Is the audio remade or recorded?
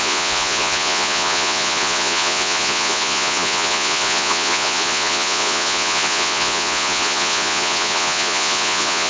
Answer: remade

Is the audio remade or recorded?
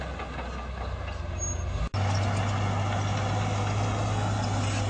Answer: recorded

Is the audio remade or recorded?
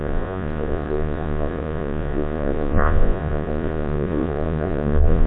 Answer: remade